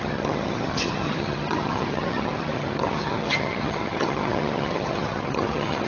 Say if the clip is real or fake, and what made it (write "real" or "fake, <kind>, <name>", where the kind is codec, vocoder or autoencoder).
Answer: fake, vocoder, HiFi-GAN